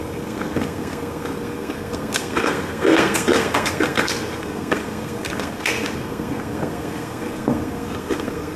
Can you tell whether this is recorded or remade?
remade